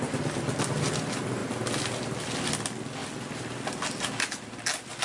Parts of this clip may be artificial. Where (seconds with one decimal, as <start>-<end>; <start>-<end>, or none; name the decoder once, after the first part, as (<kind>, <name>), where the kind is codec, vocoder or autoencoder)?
none